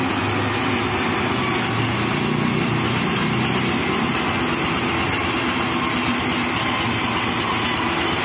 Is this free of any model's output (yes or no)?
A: yes